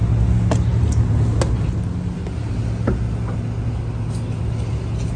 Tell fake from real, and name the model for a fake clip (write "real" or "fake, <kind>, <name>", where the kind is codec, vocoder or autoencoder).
real